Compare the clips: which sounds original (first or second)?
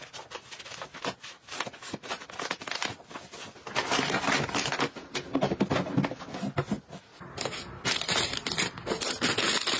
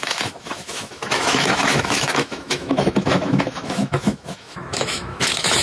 first